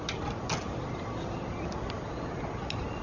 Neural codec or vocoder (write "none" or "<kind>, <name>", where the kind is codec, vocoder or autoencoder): none